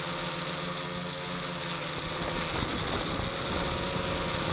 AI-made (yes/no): no